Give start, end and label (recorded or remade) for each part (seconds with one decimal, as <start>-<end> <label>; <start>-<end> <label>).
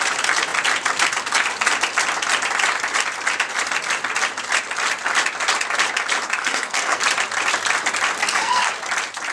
0.0-6.4 recorded; 6.4-7.0 remade; 7.0-8.2 recorded; 8.2-8.7 remade; 8.7-9.3 recorded